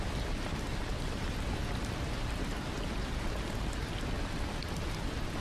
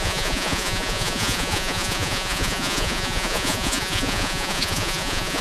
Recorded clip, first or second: first